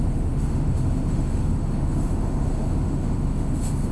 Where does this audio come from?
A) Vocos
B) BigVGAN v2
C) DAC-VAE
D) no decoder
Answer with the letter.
C